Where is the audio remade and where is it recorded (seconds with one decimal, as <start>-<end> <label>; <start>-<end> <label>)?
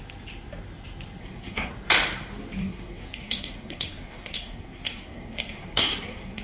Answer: 0.0-1.2 recorded; 1.2-1.7 remade; 1.7-2.6 recorded; 2.6-6.4 remade